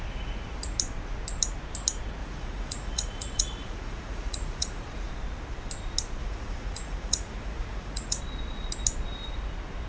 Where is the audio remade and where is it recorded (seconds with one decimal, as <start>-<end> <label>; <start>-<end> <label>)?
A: 0.0-2.2 recorded; 2.2-5.1 remade; 5.1-6.2 recorded; 6.2-8.2 remade; 8.2-9.9 recorded